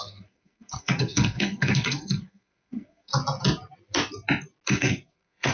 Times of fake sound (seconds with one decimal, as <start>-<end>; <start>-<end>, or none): 0.0-3.1; 4.7-5.5